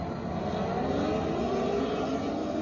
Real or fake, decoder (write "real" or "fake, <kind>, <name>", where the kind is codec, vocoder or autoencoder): real